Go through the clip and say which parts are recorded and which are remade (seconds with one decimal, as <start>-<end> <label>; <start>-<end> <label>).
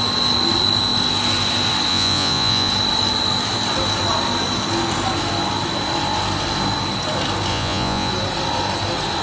0.0-1.9 recorded; 1.9-2.7 remade; 2.7-7.5 recorded; 7.5-8.1 remade; 8.1-9.2 recorded